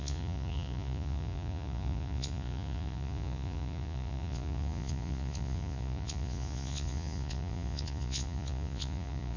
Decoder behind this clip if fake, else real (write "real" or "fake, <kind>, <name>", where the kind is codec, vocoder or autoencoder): fake, vocoder, Vocos